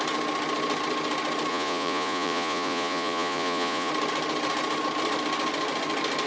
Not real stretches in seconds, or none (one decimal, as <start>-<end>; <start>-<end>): 1.5-3.9